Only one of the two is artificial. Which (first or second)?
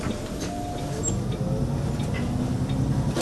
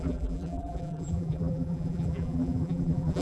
second